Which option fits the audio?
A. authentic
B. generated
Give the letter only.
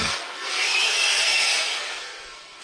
B